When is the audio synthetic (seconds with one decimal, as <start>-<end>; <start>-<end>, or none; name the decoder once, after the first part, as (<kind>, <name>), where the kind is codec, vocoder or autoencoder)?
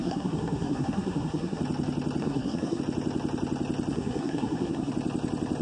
0.0-1.6 (codec, SNAC); 2.2-2.8; 3.9-4.9